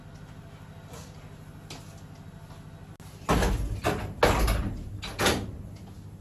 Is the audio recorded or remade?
recorded